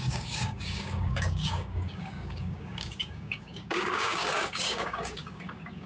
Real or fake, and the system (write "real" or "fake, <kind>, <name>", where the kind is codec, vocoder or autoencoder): fake, codec, DAC